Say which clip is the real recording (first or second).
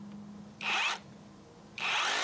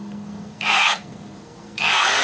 first